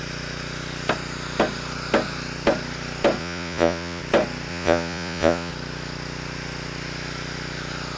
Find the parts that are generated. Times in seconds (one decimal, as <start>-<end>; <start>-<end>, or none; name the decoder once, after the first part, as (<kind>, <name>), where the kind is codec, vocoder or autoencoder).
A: 3.2-4.0 (vocoder, Vocos); 4.5-5.5